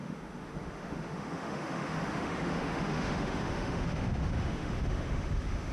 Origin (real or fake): fake